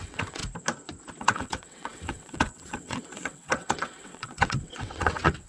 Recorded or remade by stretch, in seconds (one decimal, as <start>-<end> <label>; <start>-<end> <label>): 0.0-0.4 remade; 0.4-1.2 recorded; 1.2-5.5 remade